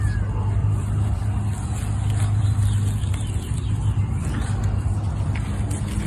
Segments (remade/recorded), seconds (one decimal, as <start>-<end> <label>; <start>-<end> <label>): 0.0-0.6 recorded; 0.6-1.2 remade; 1.2-3.0 recorded; 3.0-4.9 remade; 4.9-6.1 recorded

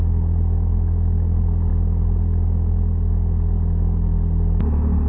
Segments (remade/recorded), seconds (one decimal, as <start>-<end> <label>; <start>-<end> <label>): 0.0-5.1 recorded